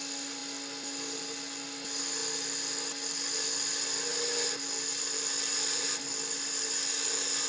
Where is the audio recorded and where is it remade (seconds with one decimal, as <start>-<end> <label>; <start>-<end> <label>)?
0.0-7.5 recorded